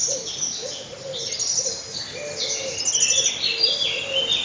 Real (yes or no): yes